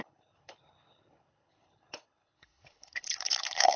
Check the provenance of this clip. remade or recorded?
remade